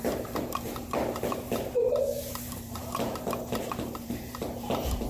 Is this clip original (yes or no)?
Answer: no